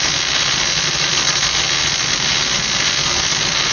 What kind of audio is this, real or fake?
real